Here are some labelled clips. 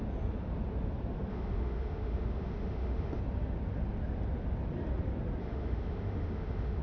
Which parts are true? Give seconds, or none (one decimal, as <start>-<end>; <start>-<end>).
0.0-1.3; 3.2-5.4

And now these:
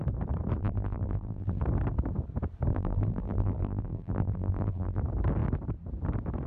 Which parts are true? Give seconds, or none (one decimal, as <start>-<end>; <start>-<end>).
0.0-0.6; 1.6-2.7; 5.0-6.5

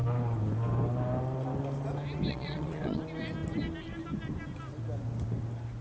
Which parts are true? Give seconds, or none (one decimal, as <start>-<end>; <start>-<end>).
0.0-2.3; 3.0-5.8

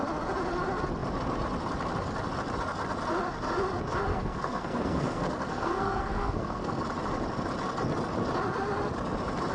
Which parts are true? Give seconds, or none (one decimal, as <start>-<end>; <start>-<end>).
0.0-4.1; 6.8-9.5

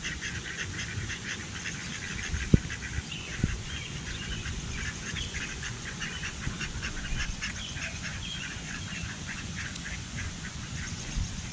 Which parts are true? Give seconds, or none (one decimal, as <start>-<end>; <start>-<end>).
1.4-3.1

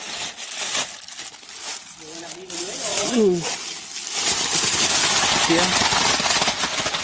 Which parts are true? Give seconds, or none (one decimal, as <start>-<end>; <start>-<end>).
0.0-2.9; 3.7-7.0

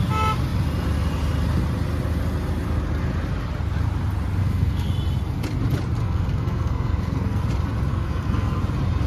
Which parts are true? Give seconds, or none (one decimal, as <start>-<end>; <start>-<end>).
0.0-4.4; 4.9-6.0; 7.5-7.9; 8.6-9.1